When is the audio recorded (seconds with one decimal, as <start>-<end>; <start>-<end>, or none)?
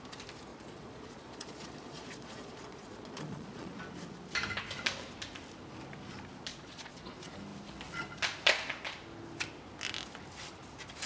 0.0-0.5; 3.8-6.5; 7.0-11.1